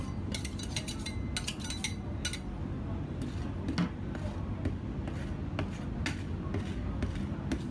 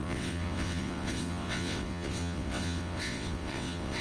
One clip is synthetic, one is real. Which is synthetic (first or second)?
second